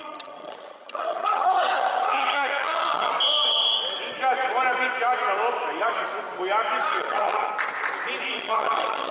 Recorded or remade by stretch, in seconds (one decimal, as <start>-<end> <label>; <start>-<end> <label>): 0.0-3.1 remade; 3.1-6.9 recorded; 6.9-7.5 remade; 7.5-8.3 recorded; 8.3-9.1 remade